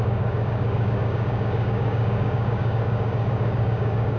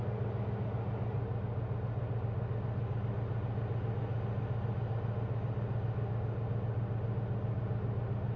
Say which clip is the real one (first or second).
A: second